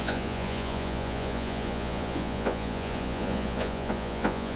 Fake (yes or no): yes